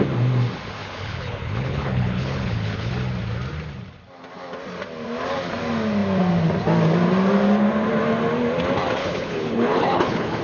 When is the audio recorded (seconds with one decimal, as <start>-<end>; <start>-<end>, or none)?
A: 0.0-0.8; 2.9-9.0